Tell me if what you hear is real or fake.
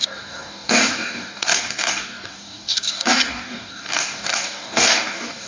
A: fake